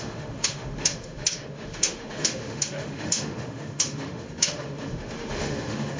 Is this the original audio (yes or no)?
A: no